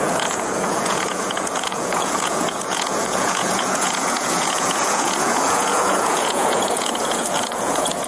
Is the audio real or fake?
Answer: fake